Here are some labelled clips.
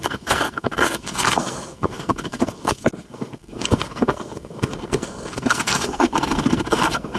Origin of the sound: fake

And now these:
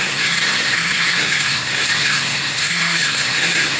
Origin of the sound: fake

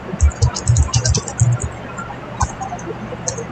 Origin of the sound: real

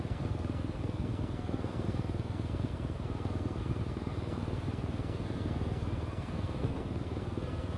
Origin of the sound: fake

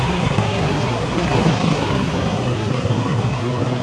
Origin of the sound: fake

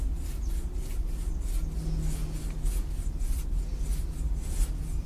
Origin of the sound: real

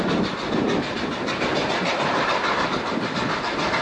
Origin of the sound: real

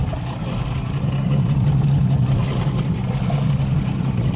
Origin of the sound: real